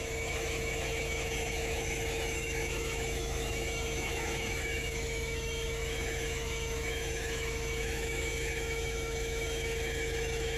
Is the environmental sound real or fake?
fake